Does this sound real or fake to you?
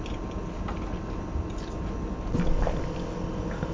real